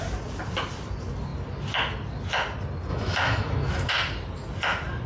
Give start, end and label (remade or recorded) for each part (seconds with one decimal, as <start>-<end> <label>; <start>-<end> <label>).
0.0-2.9 recorded; 2.9-3.9 remade; 3.9-5.1 recorded